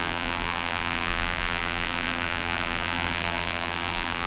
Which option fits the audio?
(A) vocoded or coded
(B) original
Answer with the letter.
A